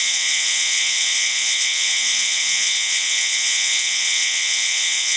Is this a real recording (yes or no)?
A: no